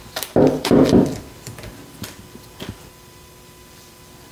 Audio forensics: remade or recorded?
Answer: remade